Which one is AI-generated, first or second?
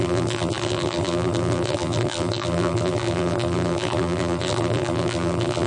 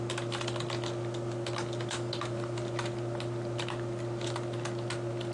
first